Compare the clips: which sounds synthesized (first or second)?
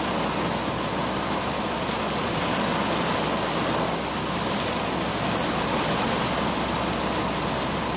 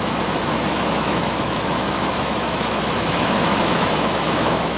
second